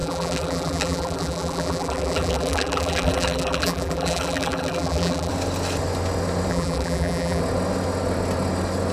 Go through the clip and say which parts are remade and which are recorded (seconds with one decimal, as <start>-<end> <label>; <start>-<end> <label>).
0.0-5.3 remade; 5.3-6.5 recorded; 6.5-7.4 remade; 7.4-8.9 recorded